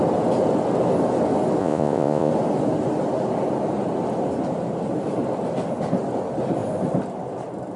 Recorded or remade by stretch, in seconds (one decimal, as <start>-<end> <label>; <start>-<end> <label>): 0.0-1.6 recorded; 1.6-2.3 remade; 2.3-7.8 recorded